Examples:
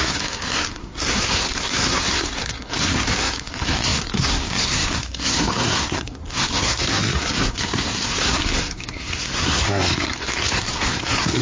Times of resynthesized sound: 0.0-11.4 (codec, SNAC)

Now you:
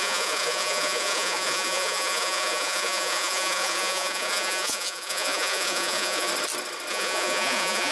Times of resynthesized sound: 0.0-6.3 (vocoder, Vocos); 6.9-7.9

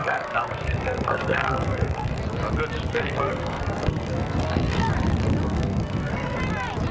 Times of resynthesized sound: 0.0-2.2 (codec, SNAC); 2.9-4.9; 5.4-6.4

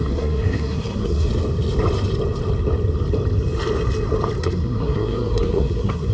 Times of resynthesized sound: 0.0-1.3 (codec, SNAC); 4.4-6.1

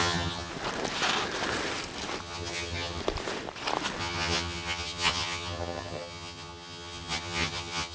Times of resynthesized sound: 0.0-0.5 (vocoder, HiFi-GAN); 2.2-3.0; 4.0-7.9

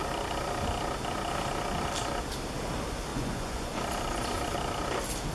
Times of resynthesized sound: 3.1-3.8 (vocoder, Vocos)

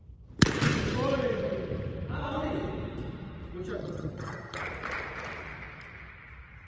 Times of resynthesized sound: 3.8-4.6 (vocoder, HiFi-GAN)